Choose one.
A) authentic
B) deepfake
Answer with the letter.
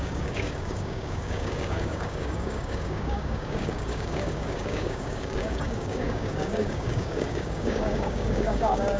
B